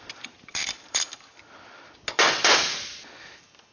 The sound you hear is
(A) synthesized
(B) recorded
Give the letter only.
B